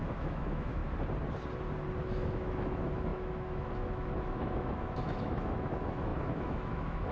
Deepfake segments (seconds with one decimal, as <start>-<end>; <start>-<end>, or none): 0.0-0.8; 2.0-7.1